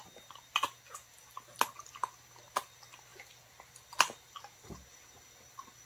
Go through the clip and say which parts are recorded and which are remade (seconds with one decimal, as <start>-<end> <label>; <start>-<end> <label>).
0.0-5.9 recorded